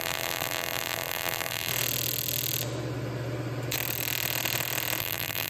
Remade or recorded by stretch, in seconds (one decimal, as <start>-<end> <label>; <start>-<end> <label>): 0.0-1.7 remade; 1.7-5.0 recorded; 5.0-5.5 remade

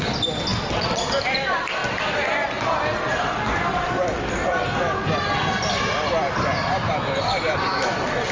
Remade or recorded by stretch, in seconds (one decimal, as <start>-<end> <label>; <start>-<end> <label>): 0.0-1.8 remade; 1.8-6.3 recorded; 6.3-8.3 remade

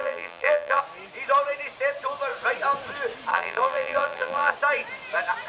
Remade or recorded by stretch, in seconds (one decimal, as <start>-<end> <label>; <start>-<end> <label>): 0.0-0.8 remade; 0.8-3.3 recorded; 3.3-4.5 remade; 4.5-5.5 recorded

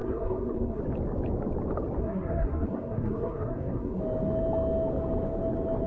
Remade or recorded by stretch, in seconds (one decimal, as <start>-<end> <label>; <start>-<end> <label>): 0.0-0.8 remade; 0.8-2.0 recorded; 2.0-4.0 remade; 4.0-5.9 recorded

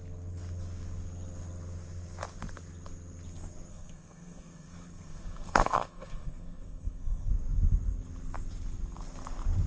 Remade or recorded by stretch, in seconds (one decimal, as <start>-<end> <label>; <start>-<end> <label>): 0.0-3.7 recorded; 3.7-7.3 remade; 7.3-9.7 recorded

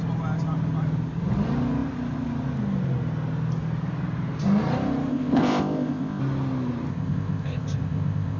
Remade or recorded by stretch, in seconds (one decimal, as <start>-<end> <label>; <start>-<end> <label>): 0.0-5.1 recorded; 5.1-6.2 remade; 6.2-6.9 recorded; 6.9-8.4 remade